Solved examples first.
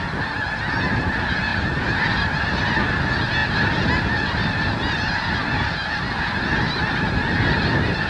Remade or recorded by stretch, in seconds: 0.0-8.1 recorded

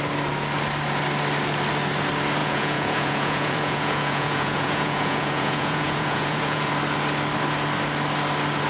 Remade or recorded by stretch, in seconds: 0.0-2.4 recorded; 2.4-6.7 remade; 6.7-8.7 recorded

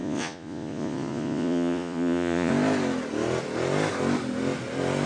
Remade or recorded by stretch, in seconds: 0.0-2.5 remade; 2.5-5.1 recorded

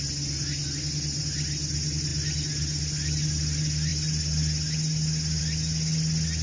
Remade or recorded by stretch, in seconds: 0.0-6.4 recorded

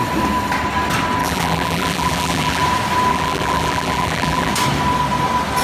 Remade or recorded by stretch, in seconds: 0.0-1.2 recorded; 1.2-2.6 remade; 2.6-3.1 recorded; 3.1-4.5 remade; 4.5-5.6 recorded

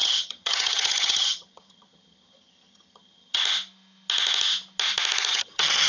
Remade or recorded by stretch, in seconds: 0.0-3.4 remade; 3.4-5.3 recorded; 5.3-5.9 remade

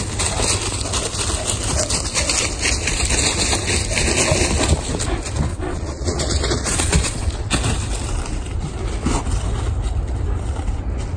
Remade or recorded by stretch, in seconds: 0.0-5.5 recorded; 5.5-7.3 remade; 7.3-11.2 recorded